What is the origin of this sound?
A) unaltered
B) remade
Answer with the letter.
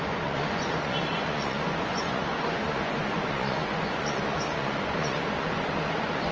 B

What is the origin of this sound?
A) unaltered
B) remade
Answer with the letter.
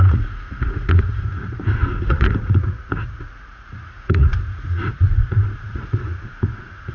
B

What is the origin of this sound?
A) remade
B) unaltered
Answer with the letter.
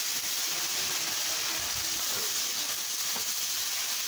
B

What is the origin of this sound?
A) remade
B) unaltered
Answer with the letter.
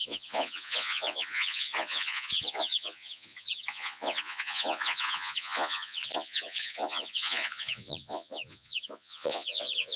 A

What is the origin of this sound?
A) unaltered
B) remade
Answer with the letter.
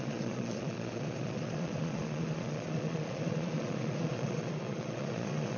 B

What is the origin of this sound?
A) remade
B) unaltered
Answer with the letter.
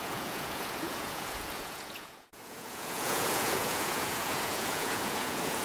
A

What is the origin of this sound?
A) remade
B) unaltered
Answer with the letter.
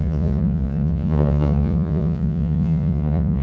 A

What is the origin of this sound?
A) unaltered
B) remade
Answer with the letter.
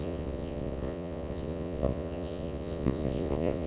B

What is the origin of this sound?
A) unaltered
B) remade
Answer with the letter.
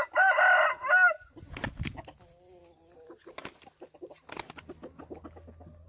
A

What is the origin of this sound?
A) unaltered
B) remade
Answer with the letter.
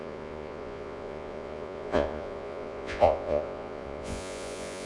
B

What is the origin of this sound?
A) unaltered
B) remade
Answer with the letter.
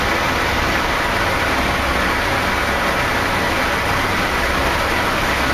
A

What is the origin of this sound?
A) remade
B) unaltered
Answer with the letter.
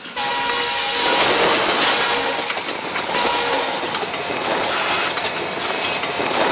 B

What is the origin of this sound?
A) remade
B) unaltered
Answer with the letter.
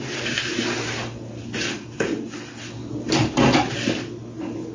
B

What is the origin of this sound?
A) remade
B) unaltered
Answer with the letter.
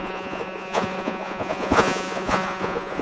A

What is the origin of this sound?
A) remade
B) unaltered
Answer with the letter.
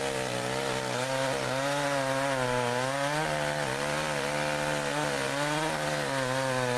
B